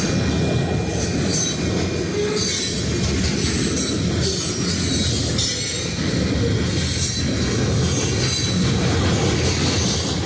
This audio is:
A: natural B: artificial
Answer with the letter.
A